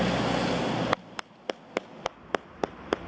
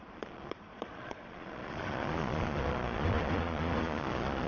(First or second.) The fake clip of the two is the second